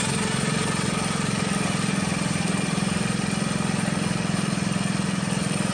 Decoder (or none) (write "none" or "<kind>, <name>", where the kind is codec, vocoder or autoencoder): none